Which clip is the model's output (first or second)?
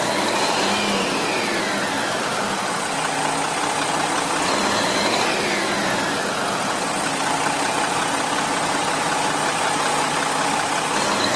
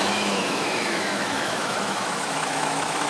second